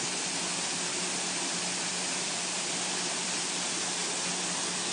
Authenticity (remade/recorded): recorded